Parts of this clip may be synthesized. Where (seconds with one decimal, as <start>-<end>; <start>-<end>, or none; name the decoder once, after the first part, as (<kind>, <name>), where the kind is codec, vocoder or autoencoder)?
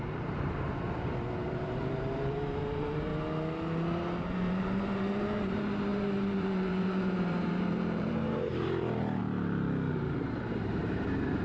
0.0-3.1 (vocoder, BigVGAN v2); 4.2-9.2; 9.9-11.4